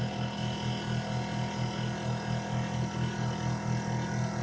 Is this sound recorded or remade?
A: recorded